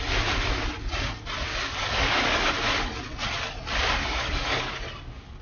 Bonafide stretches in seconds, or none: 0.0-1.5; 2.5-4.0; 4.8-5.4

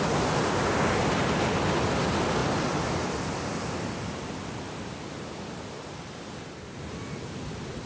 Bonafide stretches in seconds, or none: 0.0-7.9